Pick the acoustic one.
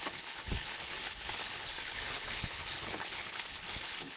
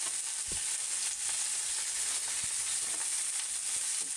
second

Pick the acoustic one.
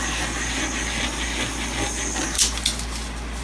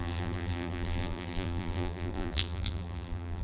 first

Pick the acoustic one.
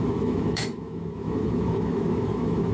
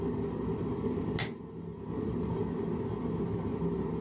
second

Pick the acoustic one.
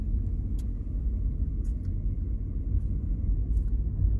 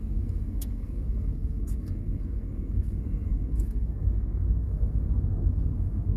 first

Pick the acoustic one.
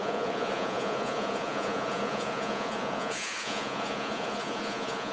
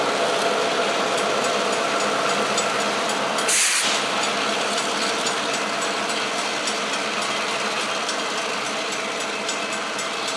second